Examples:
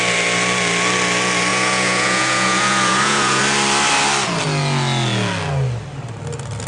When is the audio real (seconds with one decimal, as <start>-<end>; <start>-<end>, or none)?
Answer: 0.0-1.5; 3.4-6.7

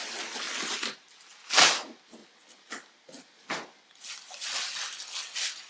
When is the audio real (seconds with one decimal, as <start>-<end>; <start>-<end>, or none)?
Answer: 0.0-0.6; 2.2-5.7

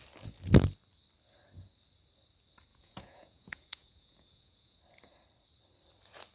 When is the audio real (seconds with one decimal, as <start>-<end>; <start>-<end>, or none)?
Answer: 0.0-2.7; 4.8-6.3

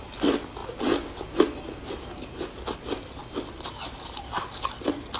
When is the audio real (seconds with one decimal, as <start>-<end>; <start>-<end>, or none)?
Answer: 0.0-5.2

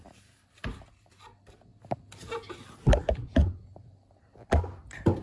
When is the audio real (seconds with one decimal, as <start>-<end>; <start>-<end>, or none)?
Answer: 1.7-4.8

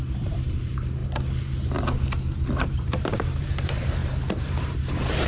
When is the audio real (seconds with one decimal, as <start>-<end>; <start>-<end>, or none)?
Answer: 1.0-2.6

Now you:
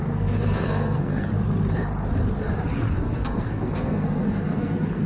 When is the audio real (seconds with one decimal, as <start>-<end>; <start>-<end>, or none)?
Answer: 1.3-2.9

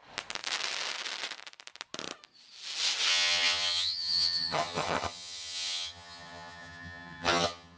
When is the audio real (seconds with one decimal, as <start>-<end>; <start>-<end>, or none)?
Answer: 0.0-3.1